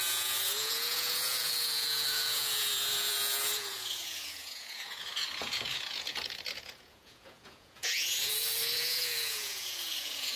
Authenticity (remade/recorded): remade